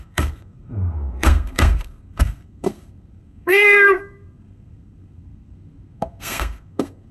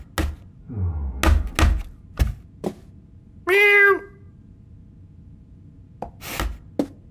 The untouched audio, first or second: second